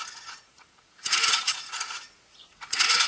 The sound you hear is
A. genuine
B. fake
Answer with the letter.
B